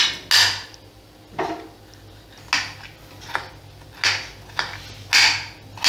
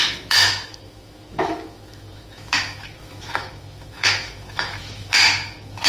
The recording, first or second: first